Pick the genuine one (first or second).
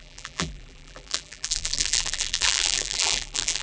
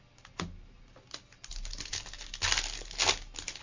second